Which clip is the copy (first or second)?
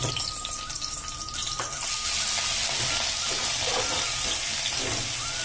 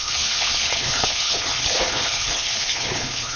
second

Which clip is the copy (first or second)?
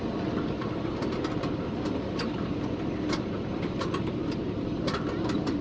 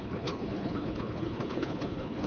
second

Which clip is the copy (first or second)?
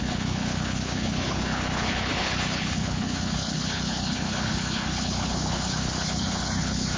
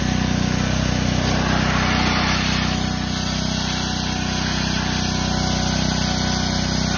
first